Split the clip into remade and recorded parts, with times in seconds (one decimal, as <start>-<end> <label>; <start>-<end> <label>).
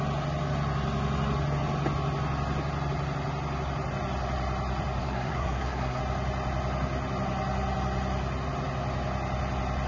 0.0-5.0 recorded; 5.0-6.0 remade; 6.0-9.9 recorded